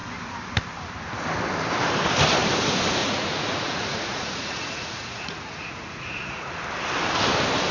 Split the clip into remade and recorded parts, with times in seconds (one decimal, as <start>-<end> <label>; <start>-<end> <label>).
0.0-3.0 recorded; 3.0-6.5 remade; 6.5-7.7 recorded